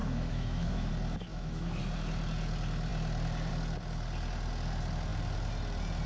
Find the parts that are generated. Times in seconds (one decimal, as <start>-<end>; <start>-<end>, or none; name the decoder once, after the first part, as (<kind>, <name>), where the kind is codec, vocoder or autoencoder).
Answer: 0.0-0.9 (autoencoder, DAC-VAE); 1.3-1.8